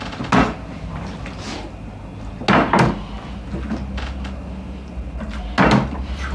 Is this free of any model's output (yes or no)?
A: yes